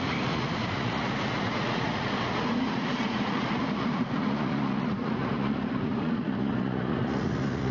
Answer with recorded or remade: remade